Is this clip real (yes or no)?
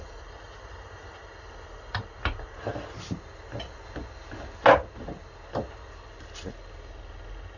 yes